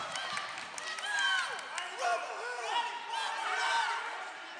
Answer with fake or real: real